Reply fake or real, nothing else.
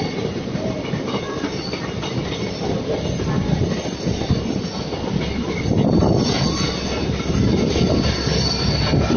real